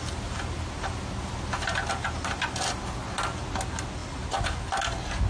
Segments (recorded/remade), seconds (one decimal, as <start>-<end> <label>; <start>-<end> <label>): 0.0-5.3 recorded